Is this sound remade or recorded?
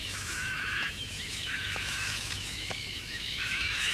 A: remade